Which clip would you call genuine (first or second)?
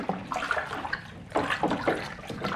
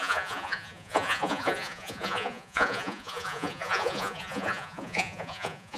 first